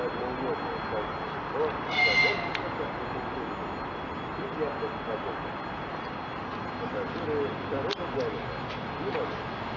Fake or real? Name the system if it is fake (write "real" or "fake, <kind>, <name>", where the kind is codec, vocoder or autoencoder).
real